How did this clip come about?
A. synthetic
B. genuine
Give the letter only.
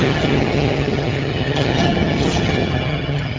A